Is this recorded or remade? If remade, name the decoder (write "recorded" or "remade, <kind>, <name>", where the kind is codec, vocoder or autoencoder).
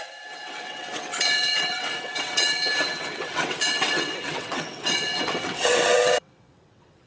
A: remade, vocoder, WaveNeXt